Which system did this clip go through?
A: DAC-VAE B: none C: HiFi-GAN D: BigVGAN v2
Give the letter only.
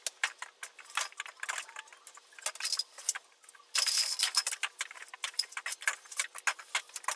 B